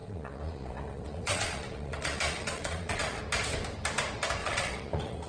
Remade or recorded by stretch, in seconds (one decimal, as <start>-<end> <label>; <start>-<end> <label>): 0.0-3.2 remade; 3.2-4.4 recorded; 4.4-5.3 remade